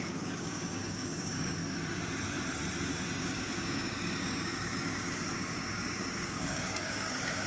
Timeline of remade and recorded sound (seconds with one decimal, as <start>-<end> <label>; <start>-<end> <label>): 0.0-1.6 remade; 1.6-3.2 recorded; 3.2-7.5 remade